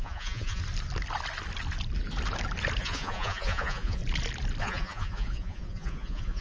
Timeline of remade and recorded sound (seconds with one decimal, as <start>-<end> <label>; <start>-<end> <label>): 0.0-0.6 remade; 0.6-2.8 recorded; 2.8-4.0 remade; 4.0-4.6 recorded; 4.6-6.4 remade